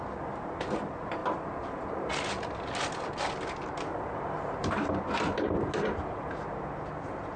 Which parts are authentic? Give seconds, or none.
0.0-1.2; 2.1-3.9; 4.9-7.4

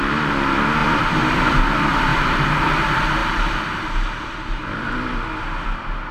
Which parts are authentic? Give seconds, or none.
0.0-0.8; 1.6-2.1; 2.7-3.2; 4.9-6.1

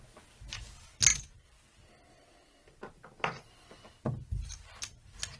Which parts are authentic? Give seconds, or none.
0.0-1.1; 1.8-5.4

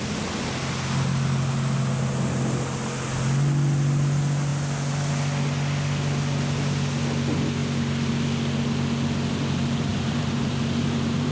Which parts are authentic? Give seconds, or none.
0.0-9.9

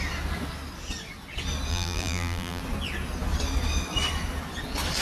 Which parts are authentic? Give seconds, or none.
0.0-1.7; 2.6-5.0